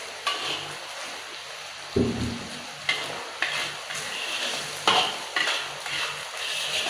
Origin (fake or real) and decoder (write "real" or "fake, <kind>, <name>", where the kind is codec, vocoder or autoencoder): real